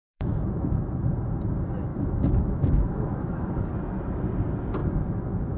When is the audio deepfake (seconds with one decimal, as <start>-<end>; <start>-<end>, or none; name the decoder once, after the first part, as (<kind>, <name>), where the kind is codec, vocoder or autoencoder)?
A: 0.0-0.8 (autoencoder, DAC-VAE); 1.9-3.5